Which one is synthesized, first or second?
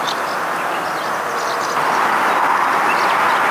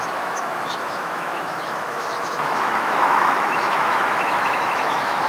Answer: second